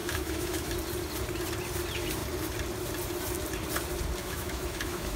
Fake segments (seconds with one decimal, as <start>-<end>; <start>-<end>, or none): 0.0-0.7; 4.2-5.2